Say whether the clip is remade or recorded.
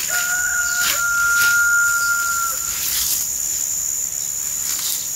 recorded